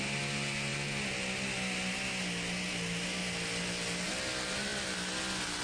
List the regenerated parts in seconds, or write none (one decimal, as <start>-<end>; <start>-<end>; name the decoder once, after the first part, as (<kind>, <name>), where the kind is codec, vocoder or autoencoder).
none